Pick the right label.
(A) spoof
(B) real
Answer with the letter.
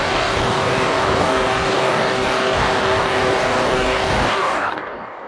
A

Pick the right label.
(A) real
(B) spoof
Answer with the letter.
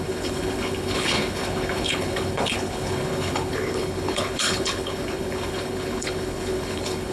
B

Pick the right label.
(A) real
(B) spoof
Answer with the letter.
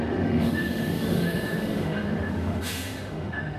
B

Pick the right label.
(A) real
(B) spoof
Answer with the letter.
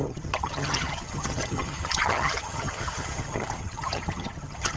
B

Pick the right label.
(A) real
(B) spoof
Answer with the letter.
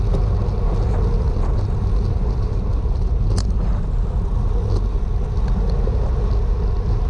A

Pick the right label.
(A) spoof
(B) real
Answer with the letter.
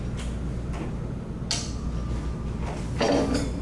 B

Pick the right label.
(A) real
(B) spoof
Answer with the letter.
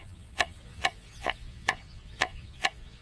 B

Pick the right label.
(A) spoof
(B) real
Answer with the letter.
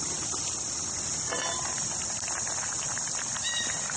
B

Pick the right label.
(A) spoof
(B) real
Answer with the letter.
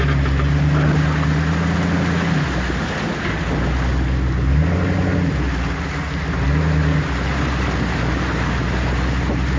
B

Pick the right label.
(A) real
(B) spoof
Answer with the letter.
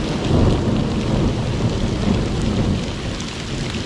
A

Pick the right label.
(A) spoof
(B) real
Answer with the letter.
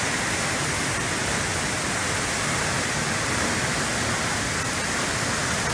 B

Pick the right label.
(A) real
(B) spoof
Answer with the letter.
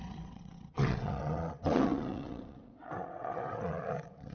B